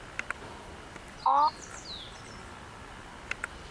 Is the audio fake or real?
real